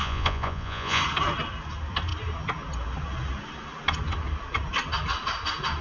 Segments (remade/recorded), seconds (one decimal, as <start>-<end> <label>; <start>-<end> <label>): 0.0-1.0 remade; 1.0-5.8 recorded